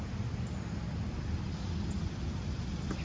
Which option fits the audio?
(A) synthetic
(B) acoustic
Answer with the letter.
B